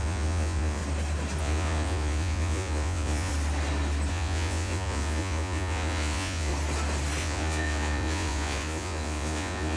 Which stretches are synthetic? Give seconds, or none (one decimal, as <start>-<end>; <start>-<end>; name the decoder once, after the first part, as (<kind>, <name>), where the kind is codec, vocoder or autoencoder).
0.0-0.8 (vocoder, Vocos); 1.4-3.3; 4.1-6.5; 7.2-9.8